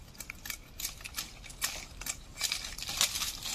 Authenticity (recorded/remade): recorded